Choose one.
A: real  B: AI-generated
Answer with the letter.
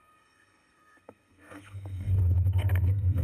B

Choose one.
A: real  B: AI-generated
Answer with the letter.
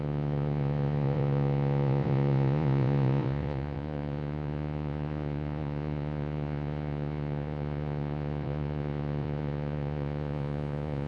B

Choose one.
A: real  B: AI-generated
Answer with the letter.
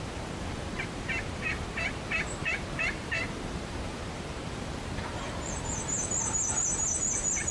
B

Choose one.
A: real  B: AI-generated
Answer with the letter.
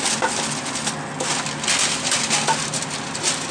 A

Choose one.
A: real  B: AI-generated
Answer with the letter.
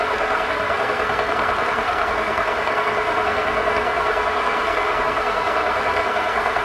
B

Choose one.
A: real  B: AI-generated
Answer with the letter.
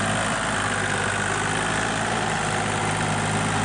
A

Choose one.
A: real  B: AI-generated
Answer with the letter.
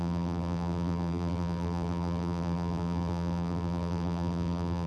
B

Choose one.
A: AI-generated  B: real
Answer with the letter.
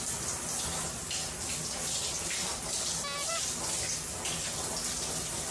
B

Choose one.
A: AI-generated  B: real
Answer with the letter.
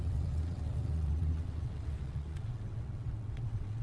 A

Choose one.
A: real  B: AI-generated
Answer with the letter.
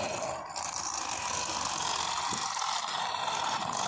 A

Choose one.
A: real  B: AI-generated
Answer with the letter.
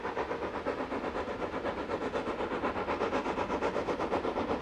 A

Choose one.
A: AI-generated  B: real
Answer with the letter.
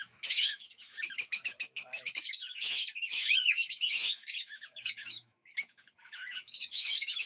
A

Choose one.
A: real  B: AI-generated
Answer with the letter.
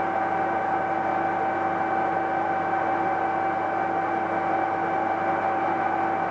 A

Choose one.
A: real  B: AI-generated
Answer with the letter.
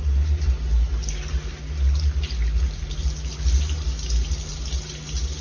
A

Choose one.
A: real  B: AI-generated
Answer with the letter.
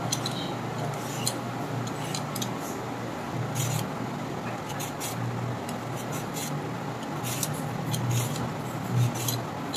A